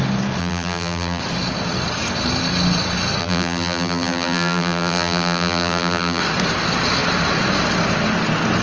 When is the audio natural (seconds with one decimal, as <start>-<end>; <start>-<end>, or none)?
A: 0.0-0.4; 1.2-3.2; 6.2-8.6